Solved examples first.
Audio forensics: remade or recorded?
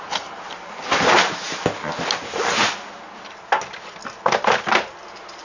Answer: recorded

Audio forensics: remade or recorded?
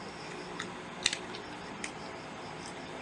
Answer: recorded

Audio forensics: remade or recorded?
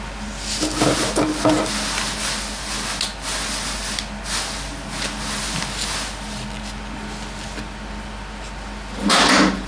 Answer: recorded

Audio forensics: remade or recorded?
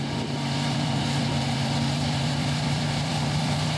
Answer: remade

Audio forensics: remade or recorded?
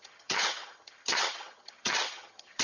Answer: remade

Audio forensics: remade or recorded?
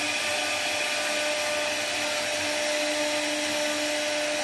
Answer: recorded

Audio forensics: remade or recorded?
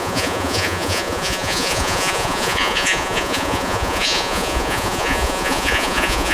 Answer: remade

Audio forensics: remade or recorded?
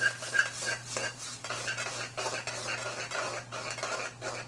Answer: recorded